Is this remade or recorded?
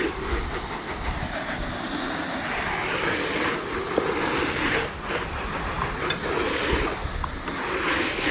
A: recorded